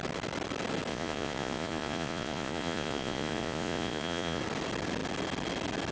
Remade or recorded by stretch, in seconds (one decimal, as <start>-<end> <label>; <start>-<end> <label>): 0.0-0.9 recorded; 0.9-4.4 remade; 4.4-5.9 recorded